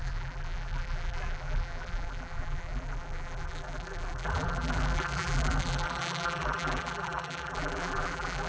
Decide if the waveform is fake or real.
fake